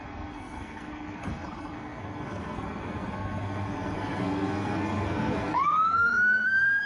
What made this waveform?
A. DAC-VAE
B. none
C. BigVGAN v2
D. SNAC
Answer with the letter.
D